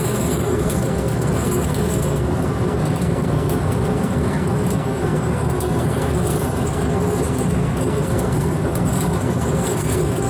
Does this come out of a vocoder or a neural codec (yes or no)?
yes